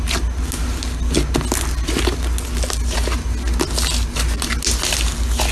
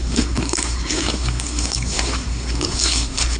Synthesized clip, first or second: second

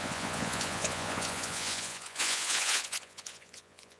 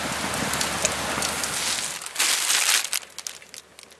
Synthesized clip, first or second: first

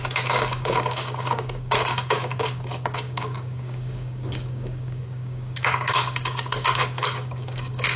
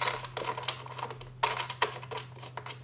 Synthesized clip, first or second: first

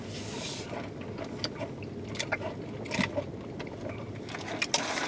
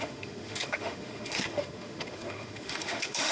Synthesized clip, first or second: second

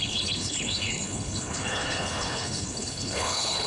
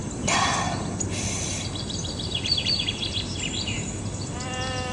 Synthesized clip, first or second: first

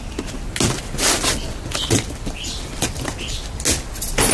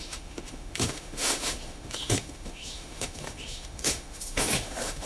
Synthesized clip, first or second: second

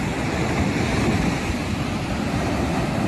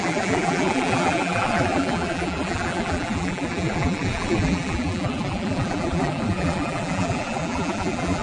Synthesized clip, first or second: second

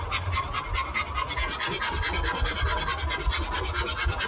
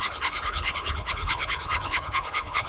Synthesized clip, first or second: second